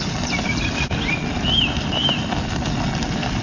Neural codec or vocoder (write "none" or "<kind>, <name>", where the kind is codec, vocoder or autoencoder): none